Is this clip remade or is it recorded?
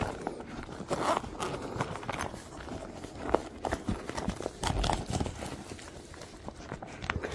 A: recorded